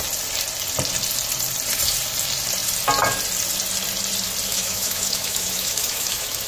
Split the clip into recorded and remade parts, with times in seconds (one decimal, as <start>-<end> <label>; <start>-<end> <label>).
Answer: 0.0-4.5 recorded; 4.5-6.5 remade